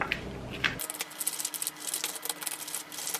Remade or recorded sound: recorded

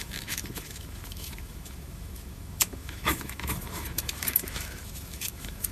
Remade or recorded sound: remade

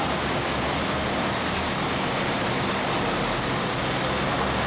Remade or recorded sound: recorded